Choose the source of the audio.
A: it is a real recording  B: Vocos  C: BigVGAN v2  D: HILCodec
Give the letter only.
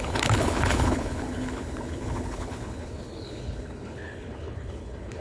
D